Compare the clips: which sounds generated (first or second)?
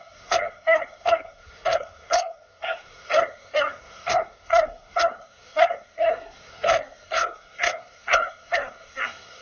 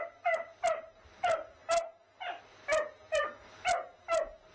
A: first